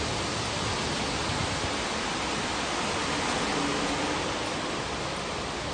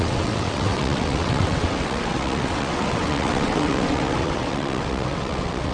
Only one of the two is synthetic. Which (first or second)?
second